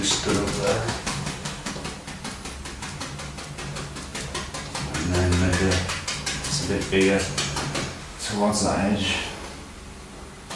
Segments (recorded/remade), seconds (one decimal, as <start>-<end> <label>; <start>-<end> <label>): 0.0-0.7 recorded; 0.7-1.7 remade; 1.7-8.0 recorded; 8.0-8.5 remade; 8.5-10.6 recorded